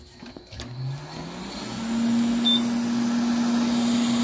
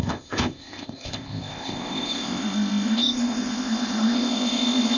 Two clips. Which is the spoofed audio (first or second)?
second